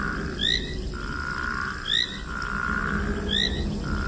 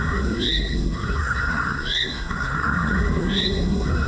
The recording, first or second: first